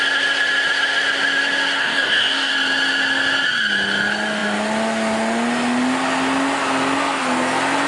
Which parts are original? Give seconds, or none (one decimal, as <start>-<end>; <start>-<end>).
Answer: 0.0-1.8; 2.5-7.9